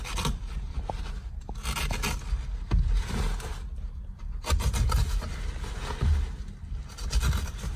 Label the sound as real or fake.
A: real